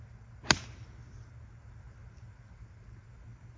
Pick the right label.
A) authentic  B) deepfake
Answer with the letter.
A